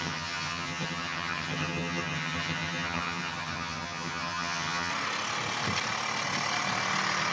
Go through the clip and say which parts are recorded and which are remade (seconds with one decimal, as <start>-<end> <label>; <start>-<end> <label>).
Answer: 0.0-4.9 remade; 4.9-7.3 recorded